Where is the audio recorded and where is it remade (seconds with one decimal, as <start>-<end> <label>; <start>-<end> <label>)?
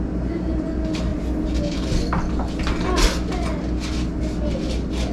0.0-5.1 recorded